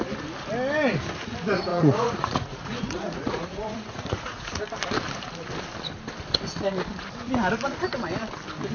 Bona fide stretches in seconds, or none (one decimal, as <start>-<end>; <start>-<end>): 0.0-1.7; 4.6-8.7